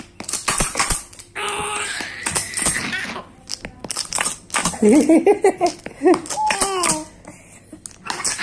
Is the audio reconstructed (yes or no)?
no